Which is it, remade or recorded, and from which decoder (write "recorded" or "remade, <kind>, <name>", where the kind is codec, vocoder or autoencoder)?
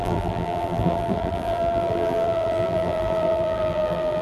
remade, vocoder, BigVGAN v2